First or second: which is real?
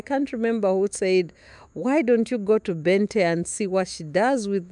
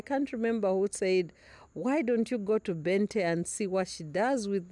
second